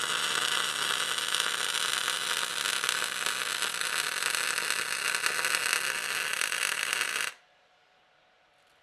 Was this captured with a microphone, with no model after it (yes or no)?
yes